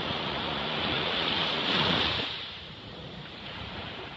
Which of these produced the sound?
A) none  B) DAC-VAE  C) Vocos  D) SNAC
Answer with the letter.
C